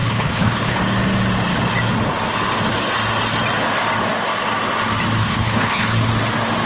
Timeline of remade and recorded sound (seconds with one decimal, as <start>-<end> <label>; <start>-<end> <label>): 0.0-0.8 remade; 0.8-5.2 recorded; 5.2-6.1 remade; 6.1-6.7 recorded

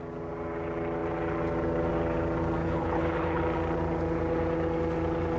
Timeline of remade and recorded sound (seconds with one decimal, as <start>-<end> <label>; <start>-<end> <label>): 0.0-2.6 recorded; 2.6-3.4 remade; 3.4-5.4 recorded

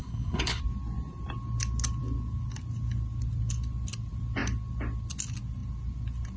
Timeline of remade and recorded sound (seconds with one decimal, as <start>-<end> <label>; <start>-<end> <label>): 0.0-0.6 remade; 0.6-6.4 recorded